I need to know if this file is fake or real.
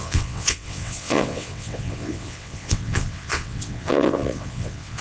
fake